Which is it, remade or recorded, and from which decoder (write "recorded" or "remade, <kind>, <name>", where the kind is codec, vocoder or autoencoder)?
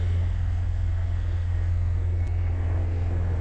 remade, codec, SNAC